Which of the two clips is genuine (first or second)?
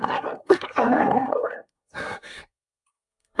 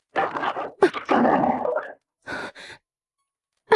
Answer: second